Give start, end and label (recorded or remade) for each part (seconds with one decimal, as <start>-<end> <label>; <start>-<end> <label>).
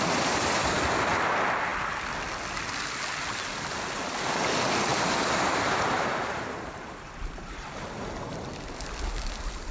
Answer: 0.0-4.9 recorded; 4.9-8.5 remade; 8.5-9.7 recorded